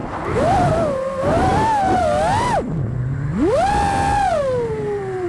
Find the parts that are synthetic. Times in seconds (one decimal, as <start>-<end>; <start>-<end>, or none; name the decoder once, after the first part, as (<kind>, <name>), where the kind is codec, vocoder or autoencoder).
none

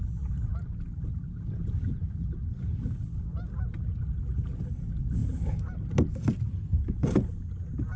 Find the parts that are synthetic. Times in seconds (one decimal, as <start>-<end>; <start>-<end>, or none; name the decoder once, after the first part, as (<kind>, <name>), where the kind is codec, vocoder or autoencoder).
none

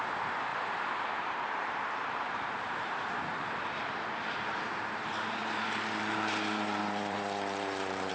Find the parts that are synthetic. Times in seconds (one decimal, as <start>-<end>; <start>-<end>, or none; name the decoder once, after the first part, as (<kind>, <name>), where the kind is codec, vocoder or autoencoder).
0.5-2.7 (vocoder, BigVGAN v2); 5.4-8.1

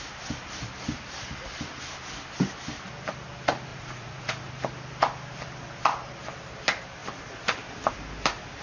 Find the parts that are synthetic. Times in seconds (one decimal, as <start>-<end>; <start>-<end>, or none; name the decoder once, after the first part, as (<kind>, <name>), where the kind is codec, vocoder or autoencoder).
3.7-4.5 (vocoder, Vocos)

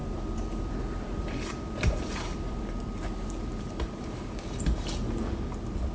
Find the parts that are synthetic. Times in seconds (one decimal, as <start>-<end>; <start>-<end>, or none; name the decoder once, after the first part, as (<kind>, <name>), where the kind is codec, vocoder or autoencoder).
0.0-2.6 (vocoder, BigVGAN v2)

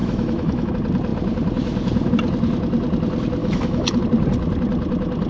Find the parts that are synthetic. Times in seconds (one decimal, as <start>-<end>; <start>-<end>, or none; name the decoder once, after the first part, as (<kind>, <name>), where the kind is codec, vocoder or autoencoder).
0.0-0.7 (autoencoder, DAC-VAE); 3.4-4.0

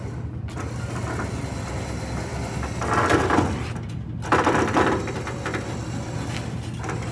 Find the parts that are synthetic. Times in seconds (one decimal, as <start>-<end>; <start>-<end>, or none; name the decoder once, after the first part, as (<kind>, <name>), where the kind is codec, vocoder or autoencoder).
none

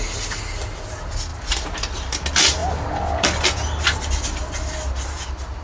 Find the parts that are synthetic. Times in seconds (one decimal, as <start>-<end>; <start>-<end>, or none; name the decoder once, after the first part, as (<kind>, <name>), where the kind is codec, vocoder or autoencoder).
none